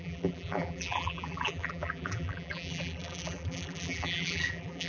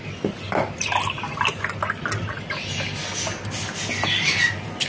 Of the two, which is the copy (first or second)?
first